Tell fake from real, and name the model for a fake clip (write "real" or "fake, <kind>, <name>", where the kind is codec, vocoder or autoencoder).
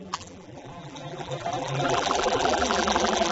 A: fake, vocoder, BigVGAN v2